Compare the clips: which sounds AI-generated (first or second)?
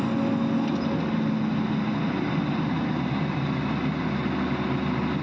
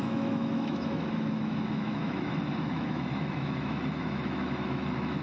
second